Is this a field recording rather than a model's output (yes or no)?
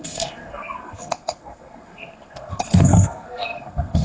no